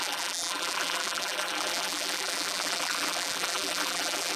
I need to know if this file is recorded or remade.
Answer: remade